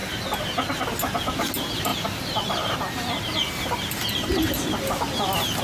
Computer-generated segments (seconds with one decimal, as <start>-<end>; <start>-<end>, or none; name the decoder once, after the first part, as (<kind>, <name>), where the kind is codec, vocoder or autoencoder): 1.9-4.5 (vocoder, BigVGAN v2)